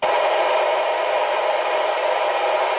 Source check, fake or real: real